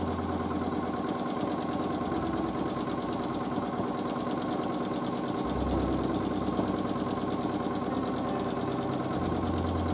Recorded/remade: recorded